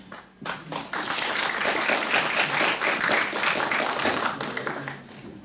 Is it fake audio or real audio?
real